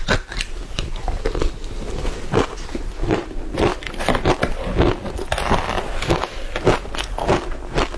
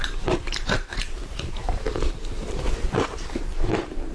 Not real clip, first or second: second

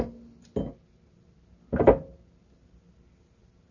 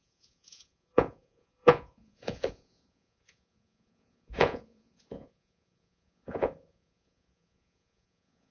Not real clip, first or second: second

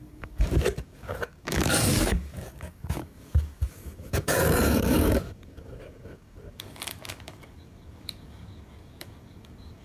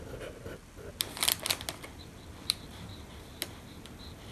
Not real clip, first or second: first